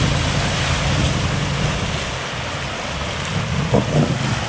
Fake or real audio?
real